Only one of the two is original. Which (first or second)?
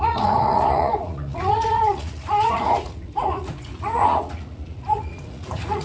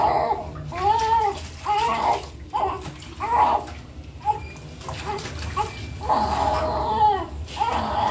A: second